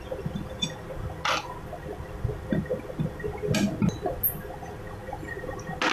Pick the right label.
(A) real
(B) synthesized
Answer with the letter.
A